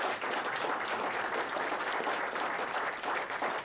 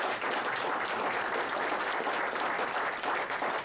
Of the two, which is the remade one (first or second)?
first